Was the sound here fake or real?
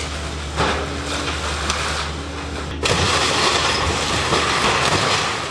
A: real